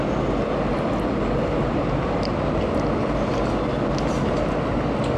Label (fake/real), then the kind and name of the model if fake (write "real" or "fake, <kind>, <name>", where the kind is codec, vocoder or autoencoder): real